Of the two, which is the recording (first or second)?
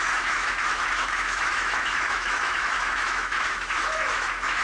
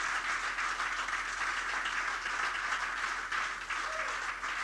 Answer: second